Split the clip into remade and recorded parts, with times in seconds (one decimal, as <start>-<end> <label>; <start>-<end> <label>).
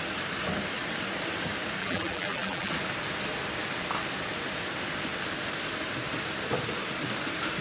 0.0-1.8 recorded; 1.8-2.7 remade; 2.7-7.6 recorded